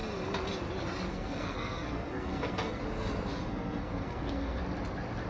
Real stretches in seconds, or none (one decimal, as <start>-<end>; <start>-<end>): 0.0-1.1; 2.8-3.4; 4.6-5.3